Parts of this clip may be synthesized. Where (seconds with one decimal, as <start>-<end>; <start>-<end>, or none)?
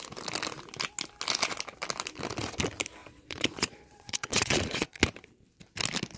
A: 3.0-5.0